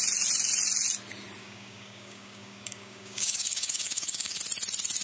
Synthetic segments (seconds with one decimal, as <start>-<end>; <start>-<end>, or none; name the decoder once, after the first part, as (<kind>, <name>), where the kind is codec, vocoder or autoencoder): 1.4-4.4 (codec, DAC)